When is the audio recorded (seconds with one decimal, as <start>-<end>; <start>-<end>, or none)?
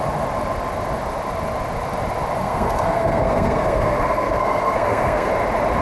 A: 0.0-2.4; 5.3-5.8